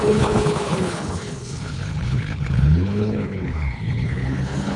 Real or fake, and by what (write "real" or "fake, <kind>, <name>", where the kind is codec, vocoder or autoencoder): fake, codec, HILCodec